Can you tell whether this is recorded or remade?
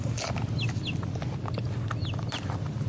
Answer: recorded